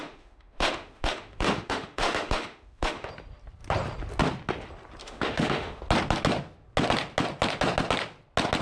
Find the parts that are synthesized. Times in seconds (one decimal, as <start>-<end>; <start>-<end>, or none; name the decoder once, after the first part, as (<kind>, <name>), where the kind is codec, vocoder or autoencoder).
0.0-3.1 (autoencoder, DAC-VAE); 5.0-5.8